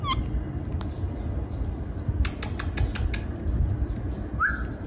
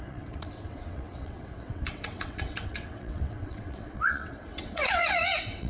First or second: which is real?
first